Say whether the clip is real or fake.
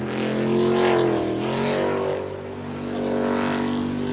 real